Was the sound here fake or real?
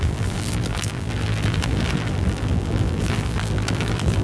fake